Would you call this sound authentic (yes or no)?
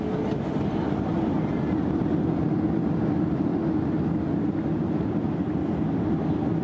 yes